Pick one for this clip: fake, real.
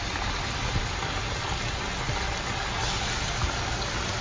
real